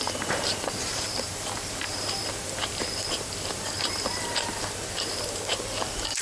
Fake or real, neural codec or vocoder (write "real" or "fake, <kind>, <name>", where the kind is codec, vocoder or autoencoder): fake, vocoder, BigVGAN v2